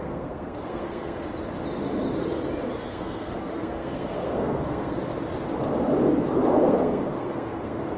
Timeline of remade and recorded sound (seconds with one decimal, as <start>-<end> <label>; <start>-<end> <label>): 0.0-1.3 remade; 1.3-2.8 recorded; 2.8-5.0 remade; 5.0-6.6 recorded; 6.6-8.0 remade